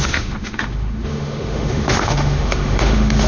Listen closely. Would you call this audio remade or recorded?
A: remade